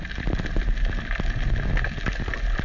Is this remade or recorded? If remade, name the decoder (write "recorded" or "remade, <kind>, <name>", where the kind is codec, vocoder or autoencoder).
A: recorded